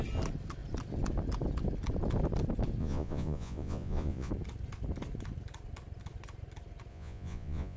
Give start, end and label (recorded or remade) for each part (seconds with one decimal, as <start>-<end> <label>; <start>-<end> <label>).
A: 0.0-2.8 recorded; 2.8-4.3 remade; 4.3-6.9 recorded; 6.9-7.8 remade